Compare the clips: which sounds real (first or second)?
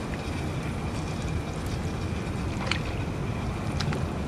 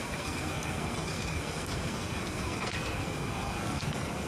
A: first